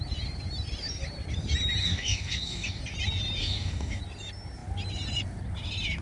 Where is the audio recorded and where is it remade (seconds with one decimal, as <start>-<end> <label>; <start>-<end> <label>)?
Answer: 0.0-1.8 recorded; 1.8-2.8 remade; 2.8-3.4 recorded; 3.4-4.0 remade; 4.0-6.0 recorded